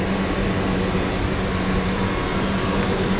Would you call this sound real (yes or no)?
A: yes